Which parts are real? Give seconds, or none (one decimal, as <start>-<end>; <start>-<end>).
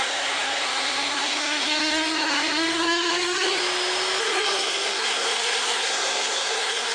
3.6-4.2